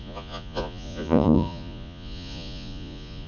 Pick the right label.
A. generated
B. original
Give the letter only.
A